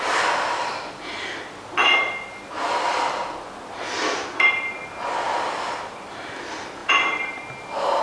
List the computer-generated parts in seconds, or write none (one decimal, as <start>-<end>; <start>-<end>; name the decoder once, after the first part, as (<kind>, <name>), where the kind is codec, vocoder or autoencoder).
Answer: none